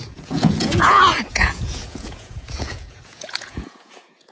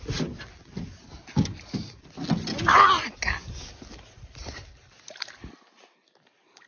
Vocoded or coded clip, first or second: first